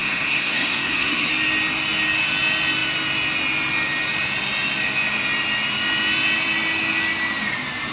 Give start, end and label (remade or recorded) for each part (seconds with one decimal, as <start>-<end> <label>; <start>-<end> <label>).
0.0-1.3 remade; 1.3-7.9 recorded